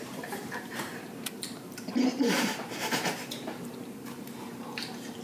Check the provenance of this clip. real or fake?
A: fake